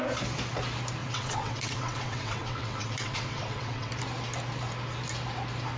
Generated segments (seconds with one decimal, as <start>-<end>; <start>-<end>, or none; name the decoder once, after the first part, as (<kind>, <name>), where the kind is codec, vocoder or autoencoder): 1.0-3.9 (vocoder, WaveNeXt)